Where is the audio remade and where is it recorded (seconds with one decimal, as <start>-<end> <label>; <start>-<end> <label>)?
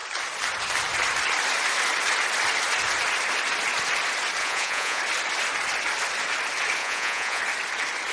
0.0-4.4 recorded; 4.4-5.0 remade; 5.0-6.8 recorded; 6.8-7.4 remade; 7.4-8.1 recorded